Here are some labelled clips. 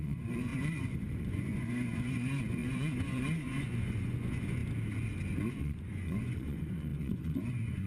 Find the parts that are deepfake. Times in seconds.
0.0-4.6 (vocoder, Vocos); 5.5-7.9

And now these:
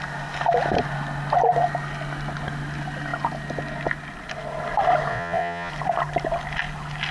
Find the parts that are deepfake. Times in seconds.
5.1-5.7 (vocoder, Vocos)

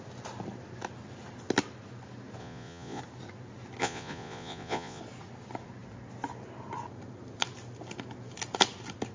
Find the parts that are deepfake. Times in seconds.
2.4-3.0 (vocoder, Vocos); 3.8-5.0